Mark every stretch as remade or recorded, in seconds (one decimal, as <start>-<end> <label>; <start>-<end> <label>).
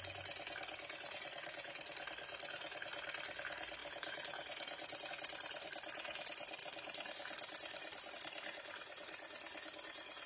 0.0-3.8 recorded; 3.8-5.1 remade; 5.1-10.3 recorded